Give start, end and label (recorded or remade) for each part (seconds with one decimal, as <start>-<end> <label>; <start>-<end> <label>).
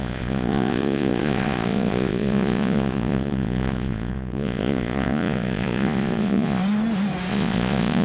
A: 0.0-6.6 remade; 6.6-7.3 recorded; 7.3-8.0 remade